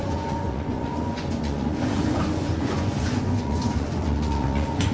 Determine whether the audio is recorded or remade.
remade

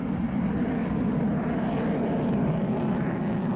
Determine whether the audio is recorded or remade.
recorded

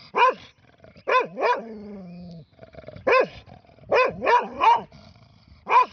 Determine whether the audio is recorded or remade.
recorded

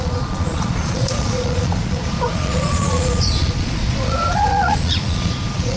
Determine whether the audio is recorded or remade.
remade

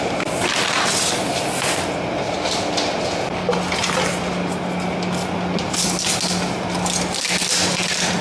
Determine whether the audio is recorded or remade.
recorded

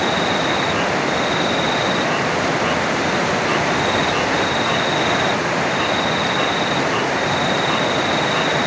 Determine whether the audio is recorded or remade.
recorded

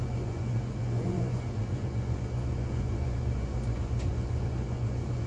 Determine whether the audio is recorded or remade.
remade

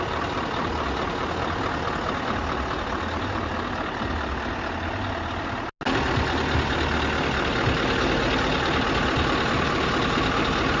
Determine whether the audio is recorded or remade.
recorded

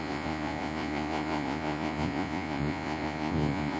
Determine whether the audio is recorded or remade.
remade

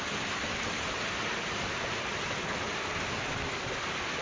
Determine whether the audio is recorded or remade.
recorded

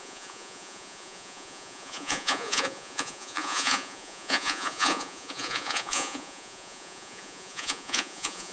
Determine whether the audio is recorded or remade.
remade